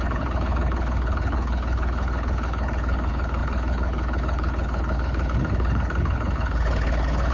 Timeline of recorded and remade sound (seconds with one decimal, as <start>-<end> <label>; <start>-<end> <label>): 0.0-7.3 remade